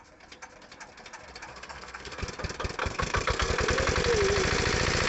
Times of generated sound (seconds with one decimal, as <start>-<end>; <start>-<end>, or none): 1.5-2.2; 2.8-3.5